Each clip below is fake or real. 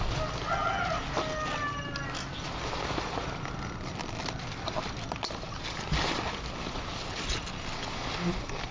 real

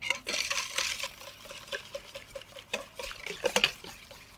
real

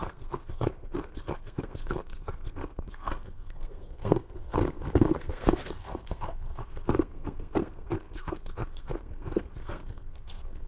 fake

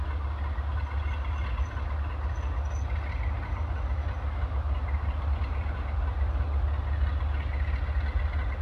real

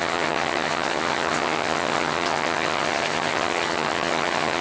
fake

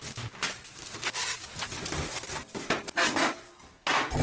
real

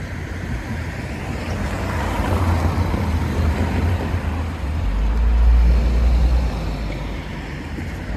real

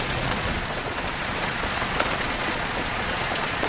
fake